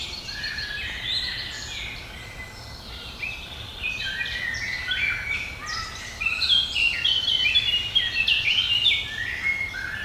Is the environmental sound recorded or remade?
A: recorded